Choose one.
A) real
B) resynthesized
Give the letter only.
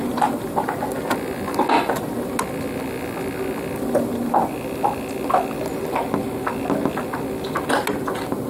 A